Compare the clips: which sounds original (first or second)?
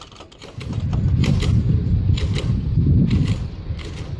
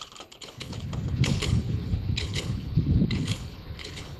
first